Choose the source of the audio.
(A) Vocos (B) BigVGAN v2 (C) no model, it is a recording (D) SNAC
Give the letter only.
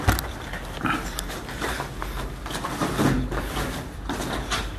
C